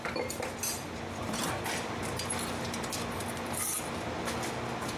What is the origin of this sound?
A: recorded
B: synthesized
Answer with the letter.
A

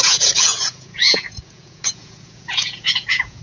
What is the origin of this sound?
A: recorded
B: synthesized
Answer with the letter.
B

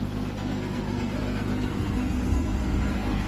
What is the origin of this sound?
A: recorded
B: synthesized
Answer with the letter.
B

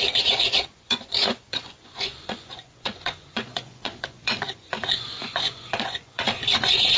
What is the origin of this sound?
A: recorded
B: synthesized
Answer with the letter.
B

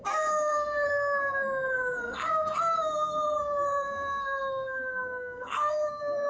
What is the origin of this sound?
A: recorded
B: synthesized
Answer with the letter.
B